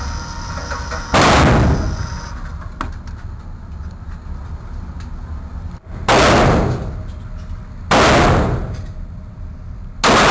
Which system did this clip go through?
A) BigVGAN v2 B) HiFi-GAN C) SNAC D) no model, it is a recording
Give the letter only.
D